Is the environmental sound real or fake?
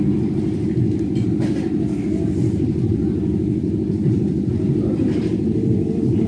fake